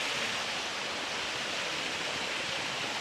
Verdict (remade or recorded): recorded